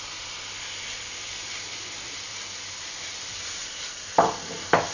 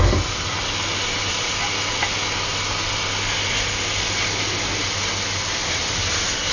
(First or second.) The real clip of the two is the second